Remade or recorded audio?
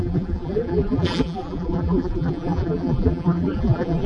remade